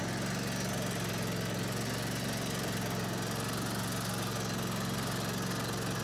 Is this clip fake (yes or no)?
no